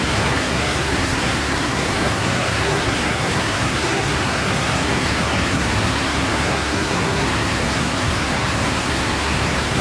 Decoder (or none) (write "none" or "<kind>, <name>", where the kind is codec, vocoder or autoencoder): codec, SNAC